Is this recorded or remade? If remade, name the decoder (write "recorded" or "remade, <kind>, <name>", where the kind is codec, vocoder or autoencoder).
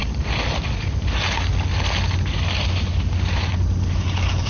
recorded